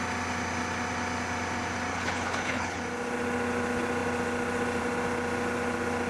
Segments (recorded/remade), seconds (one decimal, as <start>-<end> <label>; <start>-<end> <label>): 0.0-1.9 recorded; 1.9-2.8 remade; 2.8-6.1 recorded